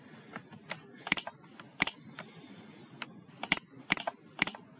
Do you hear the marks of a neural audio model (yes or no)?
no